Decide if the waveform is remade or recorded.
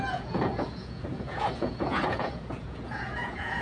remade